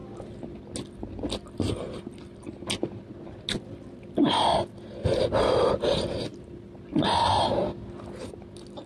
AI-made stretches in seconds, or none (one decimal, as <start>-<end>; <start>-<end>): none